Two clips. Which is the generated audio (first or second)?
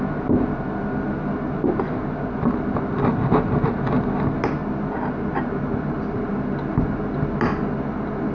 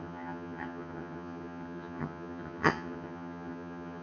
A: second